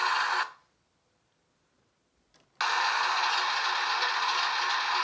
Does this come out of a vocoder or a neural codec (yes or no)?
no